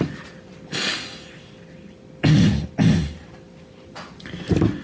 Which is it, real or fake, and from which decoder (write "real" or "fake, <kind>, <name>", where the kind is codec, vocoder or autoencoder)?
real